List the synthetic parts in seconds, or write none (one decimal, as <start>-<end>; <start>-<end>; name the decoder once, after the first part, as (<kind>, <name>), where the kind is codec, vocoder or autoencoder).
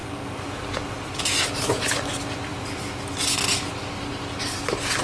0.0-1.2 (vocoder, BigVGAN v2); 2.5-3.7